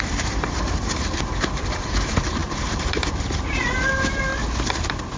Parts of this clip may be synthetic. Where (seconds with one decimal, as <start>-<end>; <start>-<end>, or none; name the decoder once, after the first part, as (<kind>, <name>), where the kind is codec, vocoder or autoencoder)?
0.0-4.3 (vocoder, BigVGAN v2)